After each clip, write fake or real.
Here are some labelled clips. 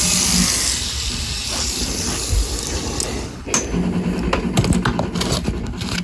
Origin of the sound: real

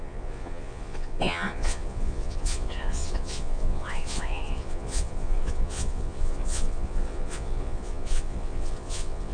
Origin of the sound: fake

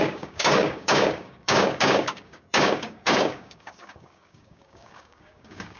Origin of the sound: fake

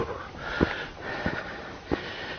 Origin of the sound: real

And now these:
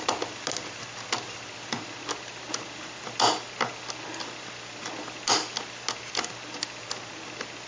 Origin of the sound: real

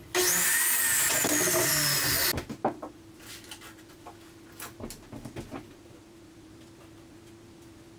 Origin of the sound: real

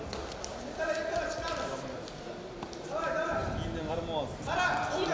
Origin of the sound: real